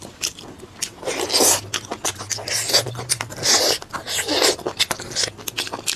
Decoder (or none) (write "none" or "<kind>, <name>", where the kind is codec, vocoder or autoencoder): none